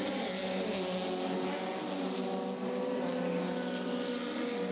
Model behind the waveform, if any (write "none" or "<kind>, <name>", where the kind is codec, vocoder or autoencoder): none